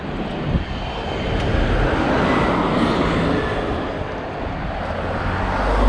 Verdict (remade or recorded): recorded